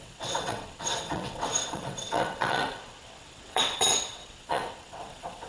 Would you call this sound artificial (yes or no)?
yes